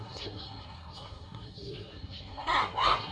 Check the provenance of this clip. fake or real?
fake